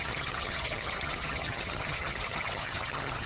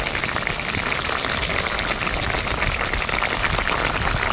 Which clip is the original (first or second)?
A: second